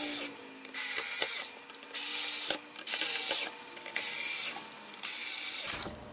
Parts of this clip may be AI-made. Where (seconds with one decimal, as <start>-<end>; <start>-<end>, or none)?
none